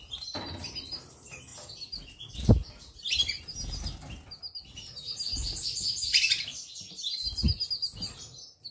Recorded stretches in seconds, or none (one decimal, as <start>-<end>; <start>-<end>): 0.0-8.7